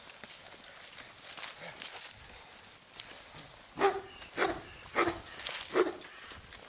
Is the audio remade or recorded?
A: recorded